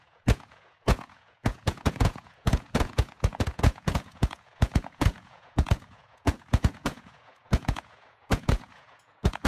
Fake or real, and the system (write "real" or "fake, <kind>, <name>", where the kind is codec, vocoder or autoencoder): fake, vocoder, Vocos